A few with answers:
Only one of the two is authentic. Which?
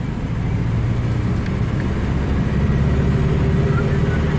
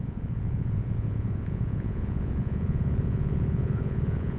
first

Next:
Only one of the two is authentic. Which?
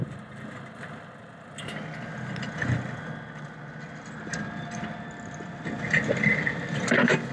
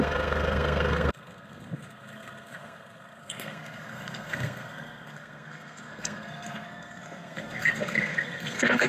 first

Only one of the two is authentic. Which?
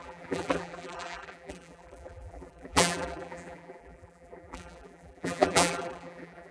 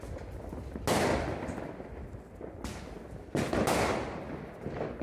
second